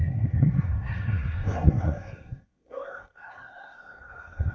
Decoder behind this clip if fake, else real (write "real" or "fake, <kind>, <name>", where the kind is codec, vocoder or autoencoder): fake, codec, SNAC